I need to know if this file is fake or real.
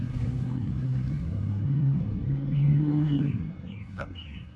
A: fake